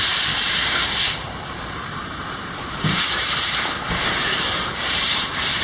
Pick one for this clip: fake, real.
fake